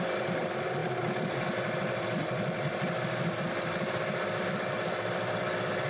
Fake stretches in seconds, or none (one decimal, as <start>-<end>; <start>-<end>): 0.0-5.9